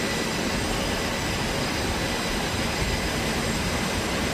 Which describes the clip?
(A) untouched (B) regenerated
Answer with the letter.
A